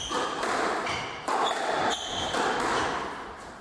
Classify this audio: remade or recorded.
recorded